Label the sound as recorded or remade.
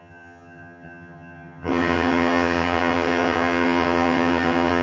remade